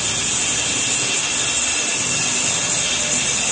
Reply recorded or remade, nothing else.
recorded